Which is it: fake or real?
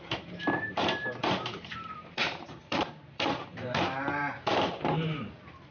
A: fake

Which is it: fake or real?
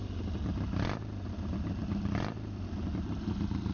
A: real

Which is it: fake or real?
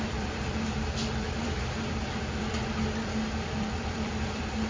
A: fake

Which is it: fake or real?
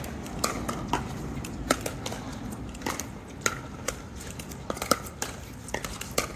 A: real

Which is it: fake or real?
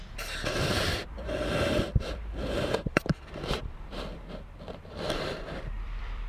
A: fake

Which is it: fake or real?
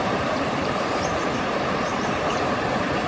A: fake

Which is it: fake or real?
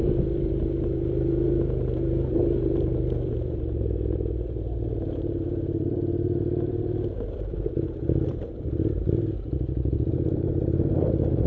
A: fake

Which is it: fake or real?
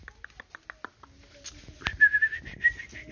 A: real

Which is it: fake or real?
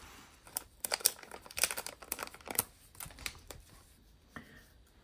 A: fake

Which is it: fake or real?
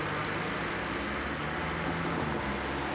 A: real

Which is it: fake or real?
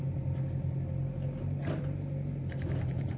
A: real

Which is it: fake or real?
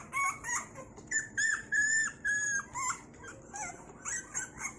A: fake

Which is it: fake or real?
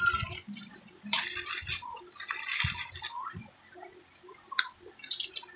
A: real